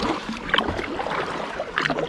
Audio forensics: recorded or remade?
remade